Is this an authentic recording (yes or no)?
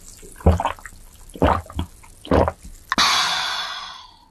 yes